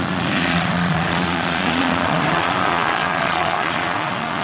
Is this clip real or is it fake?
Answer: fake